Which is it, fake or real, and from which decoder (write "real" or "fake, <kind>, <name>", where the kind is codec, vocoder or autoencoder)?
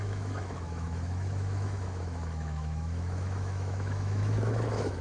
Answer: fake, autoencoder, DAC-VAE